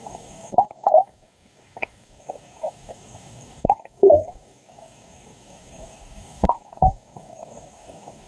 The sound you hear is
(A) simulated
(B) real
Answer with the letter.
A